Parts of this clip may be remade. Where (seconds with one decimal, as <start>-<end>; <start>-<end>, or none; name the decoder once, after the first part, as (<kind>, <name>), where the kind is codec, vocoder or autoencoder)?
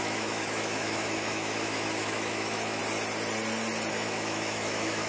0.0-2.8 (autoencoder, DAC-VAE); 3.9-5.1